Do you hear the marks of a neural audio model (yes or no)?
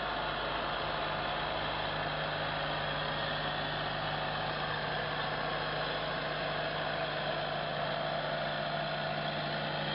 no